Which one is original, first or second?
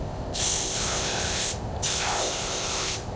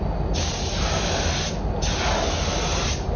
second